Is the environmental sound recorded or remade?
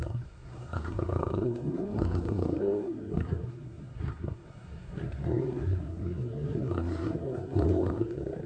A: remade